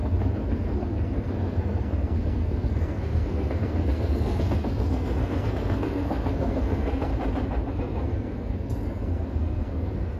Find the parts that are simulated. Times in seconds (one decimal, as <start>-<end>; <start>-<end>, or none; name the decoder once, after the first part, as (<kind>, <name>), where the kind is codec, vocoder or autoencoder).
0.0-7.1 (codec, SNAC); 7.7-10.2